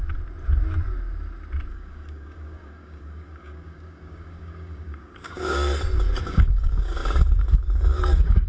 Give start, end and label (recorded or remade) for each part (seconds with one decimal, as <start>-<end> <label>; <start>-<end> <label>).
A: 0.0-1.7 recorded; 1.7-5.7 remade; 5.7-6.2 recorded; 6.2-8.5 remade